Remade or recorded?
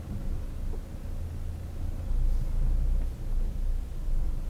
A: recorded